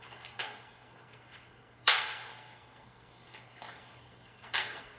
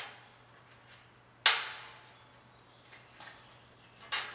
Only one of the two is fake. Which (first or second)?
first